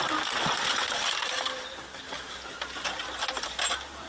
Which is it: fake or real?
real